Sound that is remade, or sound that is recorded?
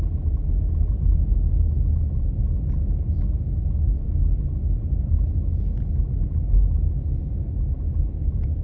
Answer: recorded